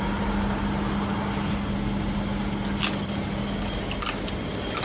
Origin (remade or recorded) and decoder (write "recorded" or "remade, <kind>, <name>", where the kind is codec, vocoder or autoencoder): recorded